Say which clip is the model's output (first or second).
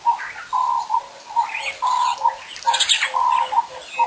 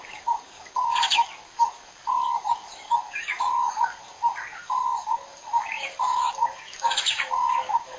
second